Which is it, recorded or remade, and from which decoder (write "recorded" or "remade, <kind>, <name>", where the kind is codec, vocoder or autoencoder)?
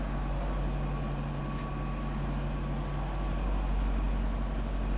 recorded